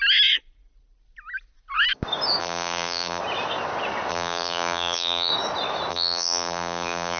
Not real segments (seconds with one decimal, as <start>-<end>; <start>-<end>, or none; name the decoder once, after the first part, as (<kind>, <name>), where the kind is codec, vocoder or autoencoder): 2.4-3.2 (vocoder, BigVGAN v2); 4.1-5.3; 5.9-7.2